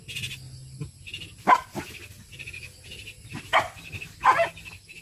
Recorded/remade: recorded